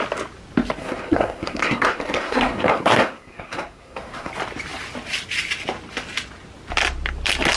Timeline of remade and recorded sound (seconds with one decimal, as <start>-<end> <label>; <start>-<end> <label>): 0.0-0.8 recorded; 0.8-4.3 remade; 4.3-7.6 recorded